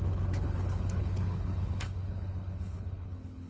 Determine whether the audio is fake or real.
fake